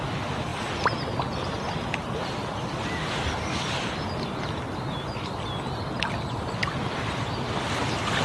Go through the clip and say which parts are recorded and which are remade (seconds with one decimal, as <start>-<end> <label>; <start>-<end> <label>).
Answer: 0.0-8.2 recorded